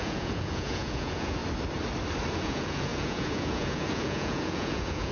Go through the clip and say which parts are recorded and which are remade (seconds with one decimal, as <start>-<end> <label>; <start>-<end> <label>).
0.0-1.4 remade; 1.4-2.3 recorded; 2.3-5.1 remade